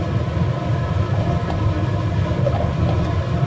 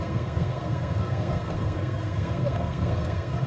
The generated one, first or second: second